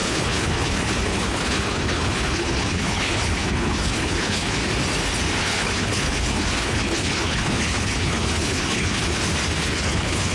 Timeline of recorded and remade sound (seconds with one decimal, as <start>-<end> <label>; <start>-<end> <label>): 0.0-4.6 remade; 4.6-5.4 recorded; 5.4-9.0 remade; 9.0-9.6 recorded; 9.6-10.3 remade